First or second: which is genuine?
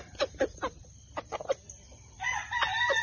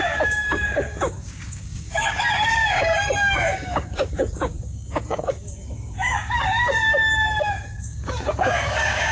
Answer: first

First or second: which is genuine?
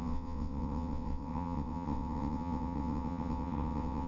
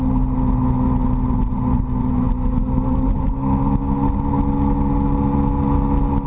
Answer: second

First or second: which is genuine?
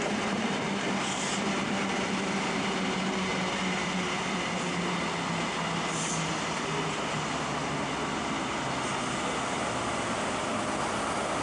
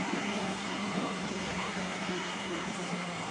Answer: first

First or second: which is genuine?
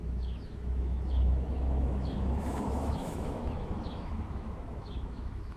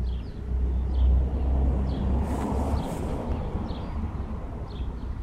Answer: second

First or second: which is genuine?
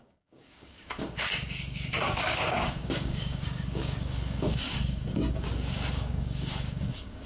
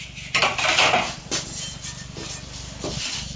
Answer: second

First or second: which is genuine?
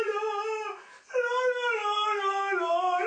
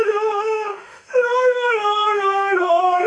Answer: first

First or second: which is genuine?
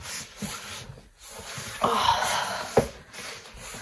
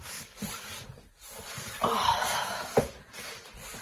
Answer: first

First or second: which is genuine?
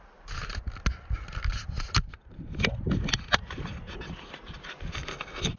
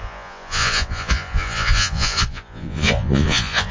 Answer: first